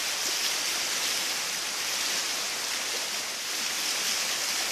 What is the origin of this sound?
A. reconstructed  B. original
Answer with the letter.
B